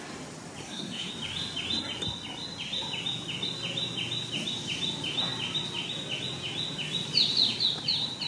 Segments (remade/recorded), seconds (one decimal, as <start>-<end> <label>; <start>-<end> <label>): 0.0-0.6 recorded; 0.6-1.1 remade; 1.1-8.3 recorded